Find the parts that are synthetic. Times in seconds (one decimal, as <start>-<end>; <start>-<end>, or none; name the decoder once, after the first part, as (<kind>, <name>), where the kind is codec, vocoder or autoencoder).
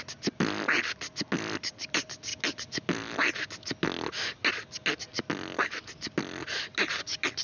none